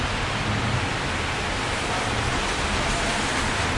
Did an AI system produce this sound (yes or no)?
no